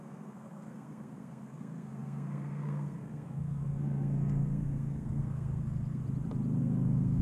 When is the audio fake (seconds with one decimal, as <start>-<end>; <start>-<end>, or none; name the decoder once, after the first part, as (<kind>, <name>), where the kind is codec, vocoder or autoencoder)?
0.0-6.0 (codec, SNAC); 6.6-7.2